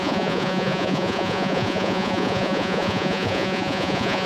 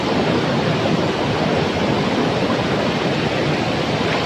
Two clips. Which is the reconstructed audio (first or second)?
first